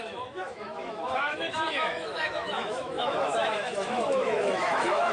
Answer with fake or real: fake